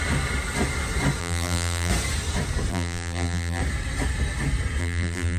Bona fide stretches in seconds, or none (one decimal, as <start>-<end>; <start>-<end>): 0.0-1.2; 1.9-2.7; 3.6-4.8